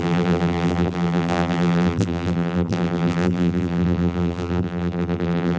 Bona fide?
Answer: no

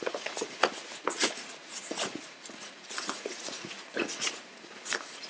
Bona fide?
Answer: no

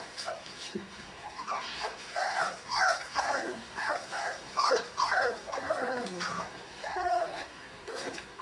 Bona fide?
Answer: no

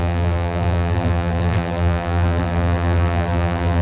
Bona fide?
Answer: no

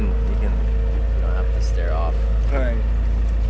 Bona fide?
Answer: yes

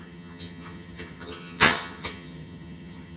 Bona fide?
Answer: no